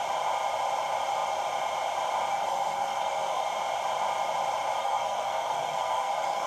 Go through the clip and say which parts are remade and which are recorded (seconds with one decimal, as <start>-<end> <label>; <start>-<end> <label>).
0.0-2.3 recorded; 2.3-3.5 remade; 3.5-4.8 recorded; 4.8-6.5 remade